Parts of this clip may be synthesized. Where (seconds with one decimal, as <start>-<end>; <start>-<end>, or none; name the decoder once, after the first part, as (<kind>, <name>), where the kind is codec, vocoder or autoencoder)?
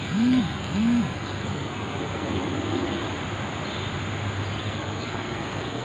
0.0-3.0 (codec, SNAC); 4.6-5.8